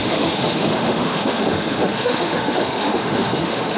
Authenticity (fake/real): fake